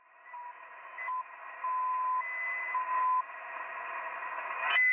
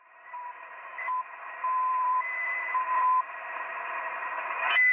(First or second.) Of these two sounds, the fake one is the second